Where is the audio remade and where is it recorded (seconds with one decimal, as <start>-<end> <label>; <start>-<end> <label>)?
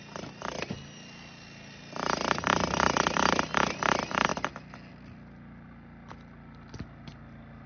0.0-7.7 recorded